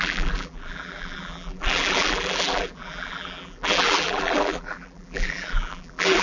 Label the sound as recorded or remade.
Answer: remade